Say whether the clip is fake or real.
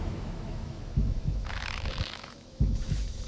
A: fake